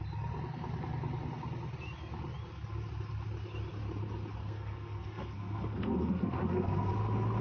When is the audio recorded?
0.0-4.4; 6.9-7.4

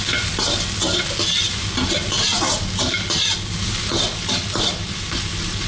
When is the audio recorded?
0.0-5.7

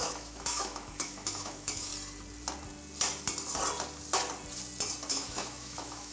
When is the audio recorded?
1.9-5.1

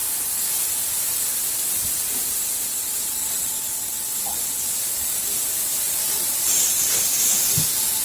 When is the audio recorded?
3.1-4.3; 5.0-5.7; 7.4-8.0

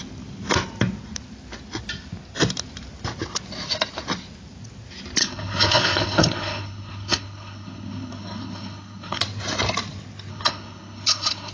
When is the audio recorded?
0.0-5.2; 9.2-10.3

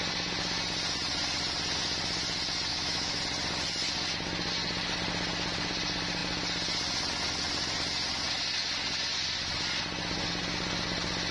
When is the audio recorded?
0.0-2.7; 3.2-11.3

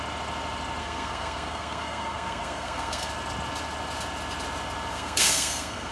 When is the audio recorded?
0.0-0.8; 3.1-4.9

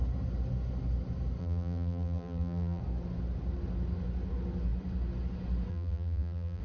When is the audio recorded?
0.0-1.4; 2.8-5.7